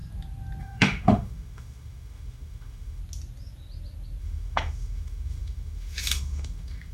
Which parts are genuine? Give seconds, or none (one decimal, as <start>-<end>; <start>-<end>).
0.0-0.6; 3.0-4.2